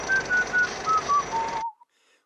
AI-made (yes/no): no